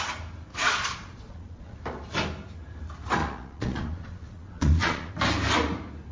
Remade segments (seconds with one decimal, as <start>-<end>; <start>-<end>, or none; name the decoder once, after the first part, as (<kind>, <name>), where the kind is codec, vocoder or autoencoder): 0.5-1.8 (vocoder, Vocos); 3.2-5.1